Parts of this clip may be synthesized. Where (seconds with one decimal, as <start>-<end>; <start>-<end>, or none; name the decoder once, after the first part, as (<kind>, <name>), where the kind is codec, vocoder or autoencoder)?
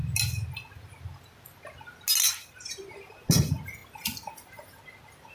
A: none